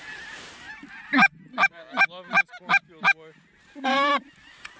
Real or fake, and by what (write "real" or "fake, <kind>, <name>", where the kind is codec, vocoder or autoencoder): real